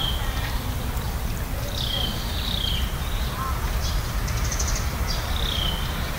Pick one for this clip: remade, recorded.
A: remade